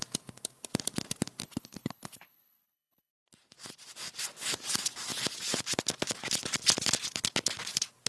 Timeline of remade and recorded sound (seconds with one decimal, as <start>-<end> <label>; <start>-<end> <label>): 0.0-1.4 recorded; 1.4-3.1 remade; 3.1-8.1 recorded